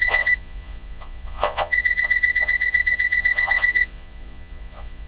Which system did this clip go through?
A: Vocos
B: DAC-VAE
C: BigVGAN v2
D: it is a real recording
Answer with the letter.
A